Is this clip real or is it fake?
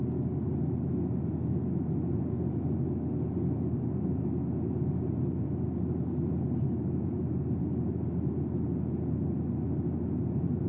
real